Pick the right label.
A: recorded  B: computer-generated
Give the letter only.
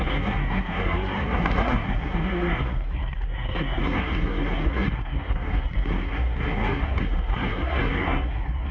B